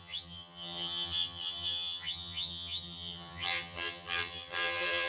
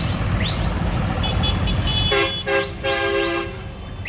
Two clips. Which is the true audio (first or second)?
second